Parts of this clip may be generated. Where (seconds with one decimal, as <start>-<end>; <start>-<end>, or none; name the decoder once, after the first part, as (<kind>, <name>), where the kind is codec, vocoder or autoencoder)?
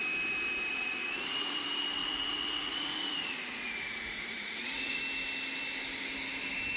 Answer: 0.7-1.6 (vocoder, Vocos); 2.0-5.0